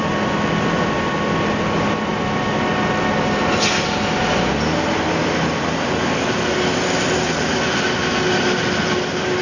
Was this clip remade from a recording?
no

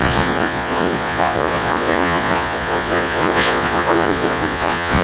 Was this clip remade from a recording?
yes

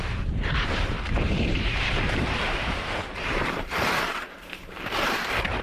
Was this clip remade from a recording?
yes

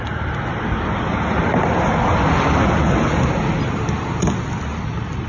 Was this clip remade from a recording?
no